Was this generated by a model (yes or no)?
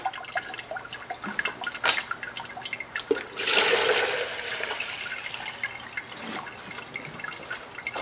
no